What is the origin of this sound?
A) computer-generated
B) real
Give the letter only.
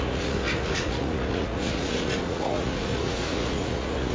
A